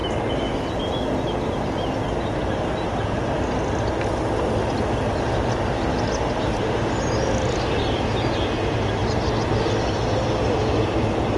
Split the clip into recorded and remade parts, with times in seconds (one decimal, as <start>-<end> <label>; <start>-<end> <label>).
0.0-11.4 recorded